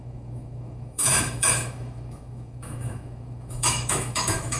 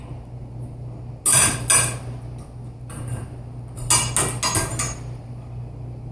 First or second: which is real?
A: second